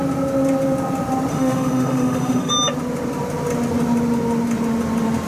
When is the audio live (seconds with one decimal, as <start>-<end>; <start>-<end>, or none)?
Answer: 0.0-1.3; 2.5-5.3